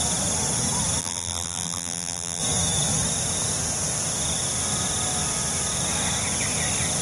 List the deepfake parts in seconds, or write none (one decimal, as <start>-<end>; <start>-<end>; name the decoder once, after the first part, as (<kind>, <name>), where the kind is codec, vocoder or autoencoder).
1.0-2.4 (vocoder, BigVGAN v2)